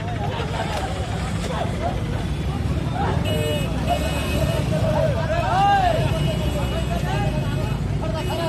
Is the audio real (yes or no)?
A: yes